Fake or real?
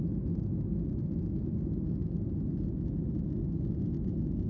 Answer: real